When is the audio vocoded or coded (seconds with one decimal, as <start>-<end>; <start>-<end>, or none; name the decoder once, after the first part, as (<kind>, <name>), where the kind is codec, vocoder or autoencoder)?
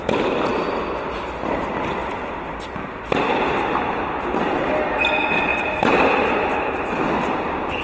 5.5-6.7 (vocoder, BigVGAN v2)